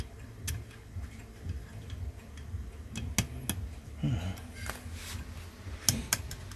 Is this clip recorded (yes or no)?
yes